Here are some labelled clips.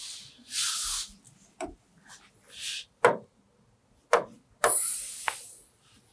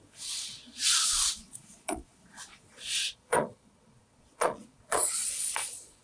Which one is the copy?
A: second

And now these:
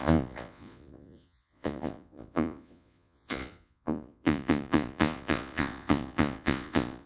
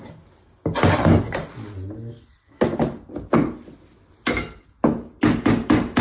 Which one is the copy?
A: first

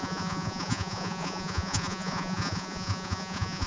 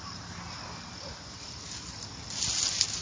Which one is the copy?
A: first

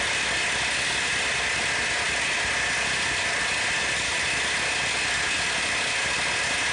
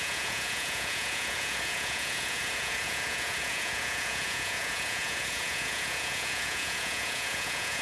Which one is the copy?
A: second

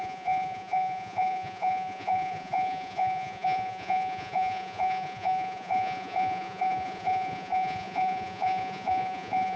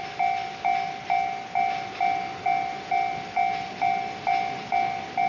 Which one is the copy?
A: first